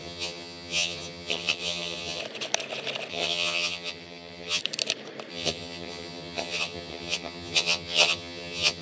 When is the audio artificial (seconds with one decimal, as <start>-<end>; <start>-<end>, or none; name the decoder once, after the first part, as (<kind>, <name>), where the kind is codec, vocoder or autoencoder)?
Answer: 0.0-2.2 (vocoder, HiFi-GAN); 3.1-4.6; 5.3-8.8